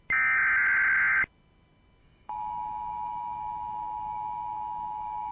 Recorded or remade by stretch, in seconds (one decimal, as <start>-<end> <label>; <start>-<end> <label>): 0.0-2.0 recorded; 2.0-5.3 remade